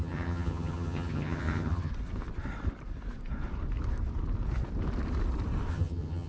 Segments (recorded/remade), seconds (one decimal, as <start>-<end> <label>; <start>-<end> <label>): 0.0-1.9 remade; 1.9-5.7 recorded; 5.7-6.3 remade